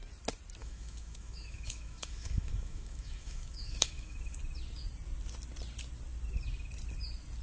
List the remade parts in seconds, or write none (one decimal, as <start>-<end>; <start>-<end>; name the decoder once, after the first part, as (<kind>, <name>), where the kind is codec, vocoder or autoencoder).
0.6-4.4 (autoencoder, DAC-VAE)